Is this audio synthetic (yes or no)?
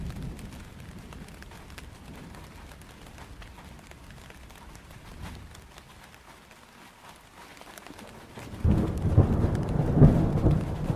no